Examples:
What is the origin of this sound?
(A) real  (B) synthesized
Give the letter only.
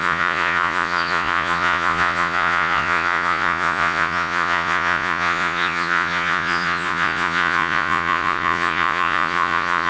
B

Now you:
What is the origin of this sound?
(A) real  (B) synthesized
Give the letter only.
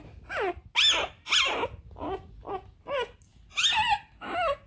A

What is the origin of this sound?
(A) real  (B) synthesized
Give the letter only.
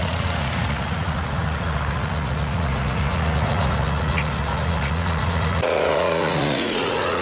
B